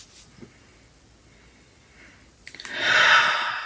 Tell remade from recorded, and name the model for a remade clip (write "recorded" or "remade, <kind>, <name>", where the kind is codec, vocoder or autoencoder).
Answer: recorded